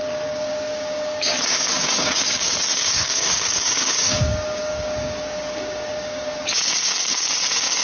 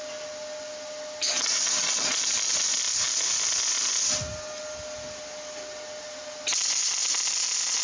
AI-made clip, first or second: first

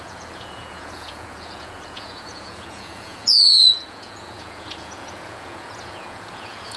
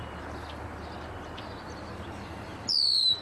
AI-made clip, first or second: first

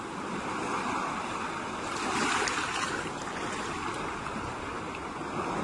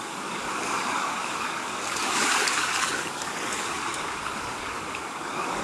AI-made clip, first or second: second